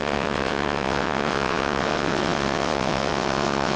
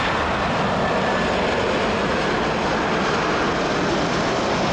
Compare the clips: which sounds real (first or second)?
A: second